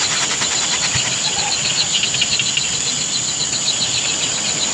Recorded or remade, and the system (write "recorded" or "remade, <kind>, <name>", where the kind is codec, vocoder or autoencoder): recorded